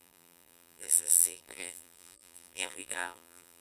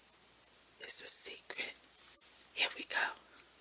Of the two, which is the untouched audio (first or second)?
second